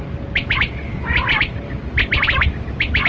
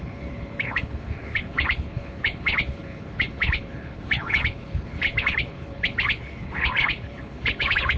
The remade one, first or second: second